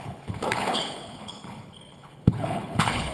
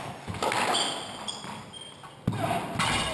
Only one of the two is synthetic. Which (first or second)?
first